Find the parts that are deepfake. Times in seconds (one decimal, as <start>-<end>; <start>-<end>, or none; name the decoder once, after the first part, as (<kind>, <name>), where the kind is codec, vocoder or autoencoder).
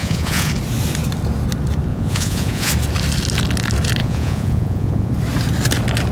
0.0-0.5 (vocoder, Vocos); 1.9-2.7; 4.0-5.1